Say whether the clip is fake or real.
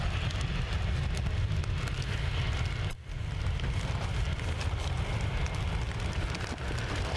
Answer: real